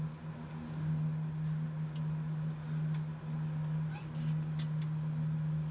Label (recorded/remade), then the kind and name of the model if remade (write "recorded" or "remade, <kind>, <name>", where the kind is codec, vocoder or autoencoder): recorded